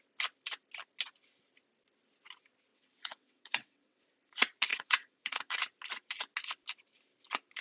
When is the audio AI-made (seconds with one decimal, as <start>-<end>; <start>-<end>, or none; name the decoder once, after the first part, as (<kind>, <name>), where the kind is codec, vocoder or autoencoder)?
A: 2.7-4.0 (vocoder, WaveNeXt); 4.7-5.6